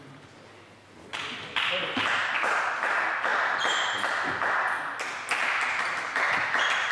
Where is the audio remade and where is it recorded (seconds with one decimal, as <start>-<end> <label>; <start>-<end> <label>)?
0.0-6.9 recorded